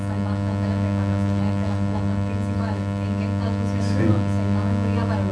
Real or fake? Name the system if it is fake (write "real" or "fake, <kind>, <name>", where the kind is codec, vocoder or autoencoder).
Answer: real